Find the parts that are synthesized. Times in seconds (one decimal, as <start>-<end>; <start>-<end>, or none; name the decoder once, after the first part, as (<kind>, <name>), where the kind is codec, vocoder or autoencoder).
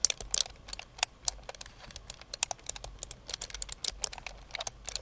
none